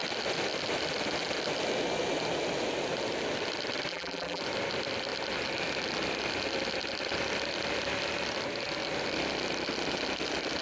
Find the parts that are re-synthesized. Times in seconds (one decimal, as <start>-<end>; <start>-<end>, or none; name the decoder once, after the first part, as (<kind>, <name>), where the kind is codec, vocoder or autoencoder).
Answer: 3.9-4.4 (vocoder, BigVGAN v2)